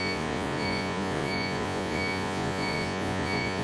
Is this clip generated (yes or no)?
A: yes